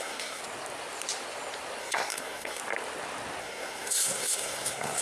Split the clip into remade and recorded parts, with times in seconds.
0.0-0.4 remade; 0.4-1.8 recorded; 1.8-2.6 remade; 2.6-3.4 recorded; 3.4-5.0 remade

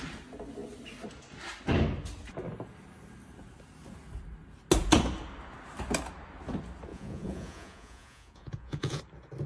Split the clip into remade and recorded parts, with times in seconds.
0.0-6.9 recorded; 6.9-9.0 remade; 9.0-9.5 recorded

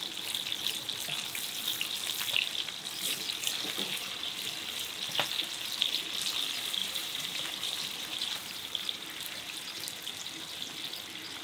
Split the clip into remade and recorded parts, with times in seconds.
0.0-6.8 recorded; 6.8-10.4 remade; 10.4-11.4 recorded

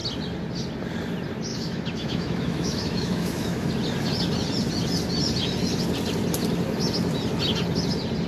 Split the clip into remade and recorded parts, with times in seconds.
0.0-1.5 recorded; 1.5-3.7 remade; 3.7-8.3 recorded

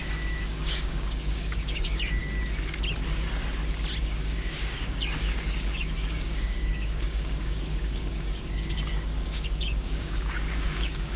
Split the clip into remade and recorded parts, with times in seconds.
0.0-2.2 remade; 2.2-4.0 recorded; 4.0-11.2 remade

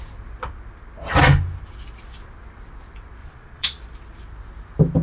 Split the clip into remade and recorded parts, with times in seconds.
0.0-3.2 recorded; 3.2-3.8 remade; 3.8-5.0 recorded